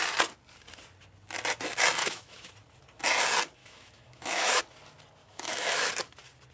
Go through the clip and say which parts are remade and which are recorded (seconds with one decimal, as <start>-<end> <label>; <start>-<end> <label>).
0.0-2.0 recorded; 2.0-2.5 remade; 2.5-3.6 recorded; 3.6-4.6 remade; 4.6-5.2 recorded; 5.2-5.9 remade; 5.9-6.5 recorded